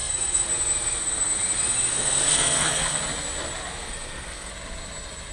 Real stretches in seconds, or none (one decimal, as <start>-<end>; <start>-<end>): 0.5-1.9; 3.0-3.8; 4.5-5.3